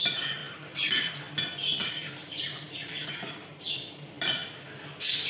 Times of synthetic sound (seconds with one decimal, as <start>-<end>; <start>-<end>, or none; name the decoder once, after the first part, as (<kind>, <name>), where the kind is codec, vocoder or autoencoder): 0.4-1.1 (vocoder, BigVGAN v2); 1.8-4.1